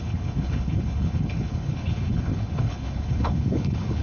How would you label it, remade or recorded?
remade